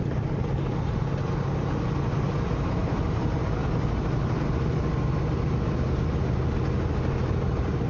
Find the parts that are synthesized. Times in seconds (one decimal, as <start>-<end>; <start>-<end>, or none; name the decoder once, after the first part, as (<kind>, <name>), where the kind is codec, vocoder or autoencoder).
none